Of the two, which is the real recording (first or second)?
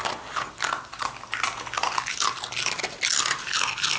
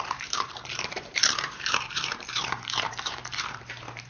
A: first